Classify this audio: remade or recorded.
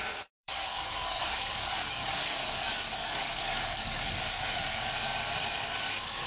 remade